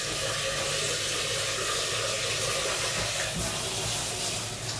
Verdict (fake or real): real